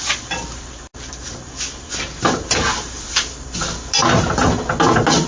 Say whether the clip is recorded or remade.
recorded